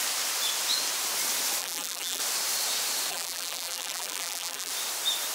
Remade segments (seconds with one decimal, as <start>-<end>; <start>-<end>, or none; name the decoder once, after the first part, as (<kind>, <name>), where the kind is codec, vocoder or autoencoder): 1.6-2.2 (vocoder, BigVGAN v2); 3.1-4.7